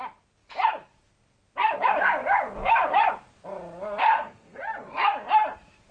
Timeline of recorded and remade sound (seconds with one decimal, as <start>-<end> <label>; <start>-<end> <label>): 0.0-4.0 recorded; 4.0-4.6 remade; 4.6-5.9 recorded